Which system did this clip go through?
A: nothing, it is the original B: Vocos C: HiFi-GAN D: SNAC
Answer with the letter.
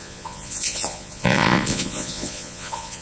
B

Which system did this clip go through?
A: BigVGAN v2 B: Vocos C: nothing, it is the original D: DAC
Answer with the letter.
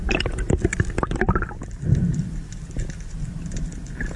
C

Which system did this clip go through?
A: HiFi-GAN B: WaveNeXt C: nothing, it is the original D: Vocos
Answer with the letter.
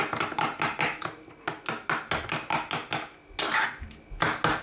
C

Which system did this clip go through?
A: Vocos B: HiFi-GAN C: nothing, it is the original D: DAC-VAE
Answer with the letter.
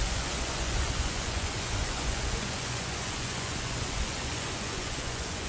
A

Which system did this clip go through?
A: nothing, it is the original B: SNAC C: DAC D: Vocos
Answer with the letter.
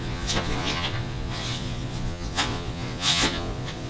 D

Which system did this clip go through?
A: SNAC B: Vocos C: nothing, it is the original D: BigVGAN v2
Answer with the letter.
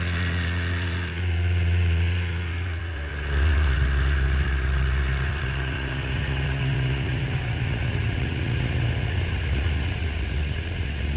B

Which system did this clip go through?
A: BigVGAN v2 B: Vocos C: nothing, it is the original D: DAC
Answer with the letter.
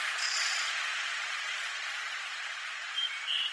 B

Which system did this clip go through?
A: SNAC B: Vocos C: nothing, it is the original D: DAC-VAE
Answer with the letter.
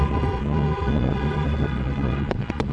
B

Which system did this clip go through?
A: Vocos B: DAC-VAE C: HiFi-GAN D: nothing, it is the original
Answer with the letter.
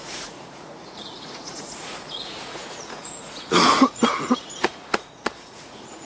A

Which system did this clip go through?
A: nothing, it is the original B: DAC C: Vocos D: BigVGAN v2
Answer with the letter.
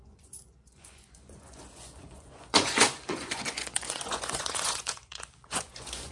C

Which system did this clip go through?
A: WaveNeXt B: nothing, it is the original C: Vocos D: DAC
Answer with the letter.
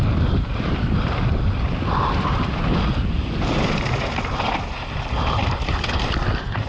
B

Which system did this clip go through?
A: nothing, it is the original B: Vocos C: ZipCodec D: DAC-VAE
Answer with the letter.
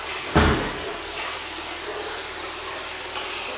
A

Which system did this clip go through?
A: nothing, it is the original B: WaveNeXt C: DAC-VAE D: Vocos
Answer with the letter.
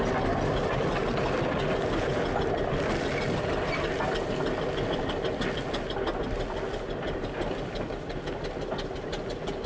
A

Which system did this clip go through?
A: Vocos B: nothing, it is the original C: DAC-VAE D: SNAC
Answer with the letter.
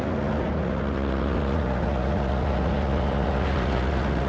A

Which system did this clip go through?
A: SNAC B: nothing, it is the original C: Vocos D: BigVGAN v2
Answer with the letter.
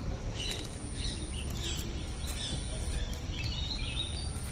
B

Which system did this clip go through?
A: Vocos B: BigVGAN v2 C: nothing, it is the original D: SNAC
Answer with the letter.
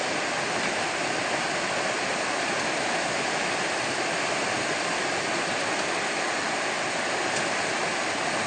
C